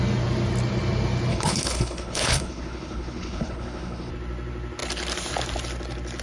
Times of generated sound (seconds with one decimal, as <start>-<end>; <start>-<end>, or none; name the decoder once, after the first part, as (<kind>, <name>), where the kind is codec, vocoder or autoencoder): 1.3-4.1 (codec, HILCodec)